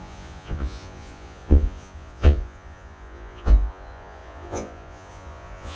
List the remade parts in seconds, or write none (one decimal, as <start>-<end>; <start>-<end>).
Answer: 0.0-5.8